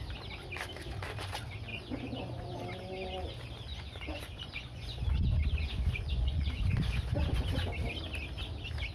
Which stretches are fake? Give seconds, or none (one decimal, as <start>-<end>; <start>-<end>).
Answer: 1.7-2.6; 3.7-7.5